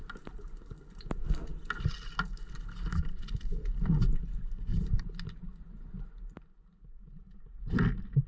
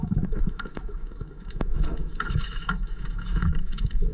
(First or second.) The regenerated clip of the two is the second